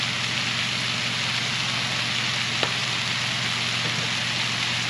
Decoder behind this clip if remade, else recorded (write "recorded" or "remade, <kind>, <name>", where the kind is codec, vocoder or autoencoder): recorded